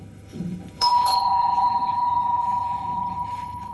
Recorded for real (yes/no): no